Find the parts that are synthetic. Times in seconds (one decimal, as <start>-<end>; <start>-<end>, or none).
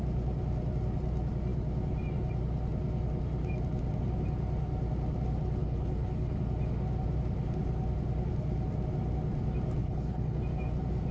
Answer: 5.6-6.4; 9.8-10.4